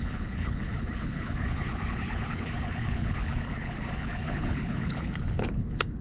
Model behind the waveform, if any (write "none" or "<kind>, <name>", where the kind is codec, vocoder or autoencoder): codec, HILCodec